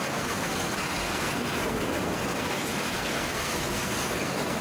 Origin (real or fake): fake